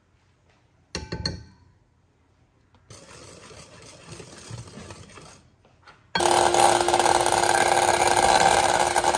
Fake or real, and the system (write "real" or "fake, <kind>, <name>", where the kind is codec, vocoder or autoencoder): real